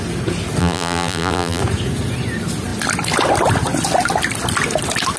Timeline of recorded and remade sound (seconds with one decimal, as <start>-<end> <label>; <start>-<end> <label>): 0.0-0.6 recorded; 0.6-1.6 remade; 1.6-5.2 recorded